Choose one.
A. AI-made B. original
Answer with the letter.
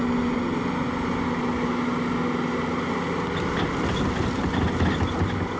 B